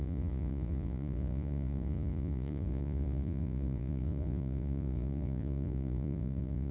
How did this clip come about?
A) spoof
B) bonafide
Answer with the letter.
A